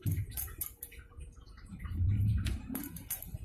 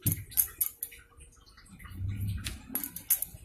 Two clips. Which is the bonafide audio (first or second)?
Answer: second